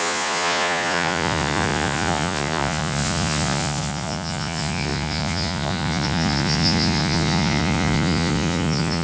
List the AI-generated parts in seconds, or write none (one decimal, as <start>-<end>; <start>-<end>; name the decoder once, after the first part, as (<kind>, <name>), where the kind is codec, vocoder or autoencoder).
0.0-9.0 (vocoder, Vocos)